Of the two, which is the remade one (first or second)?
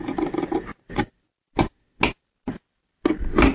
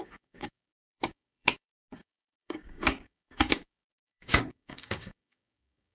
second